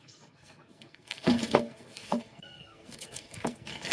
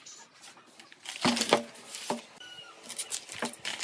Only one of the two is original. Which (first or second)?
second